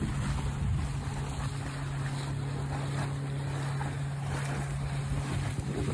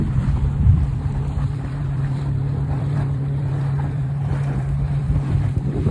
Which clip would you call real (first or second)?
first